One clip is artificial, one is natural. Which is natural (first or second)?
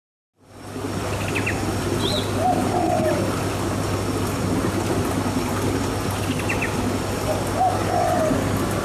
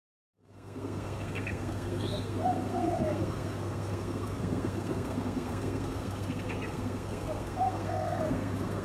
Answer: first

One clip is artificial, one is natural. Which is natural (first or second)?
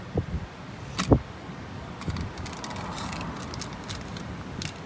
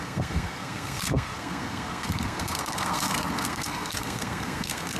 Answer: first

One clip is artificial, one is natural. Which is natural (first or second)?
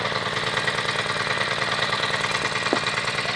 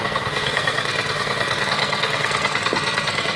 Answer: first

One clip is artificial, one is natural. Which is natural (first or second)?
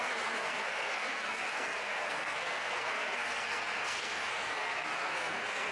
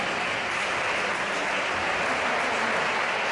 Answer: second